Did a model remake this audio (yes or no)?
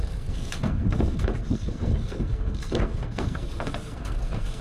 yes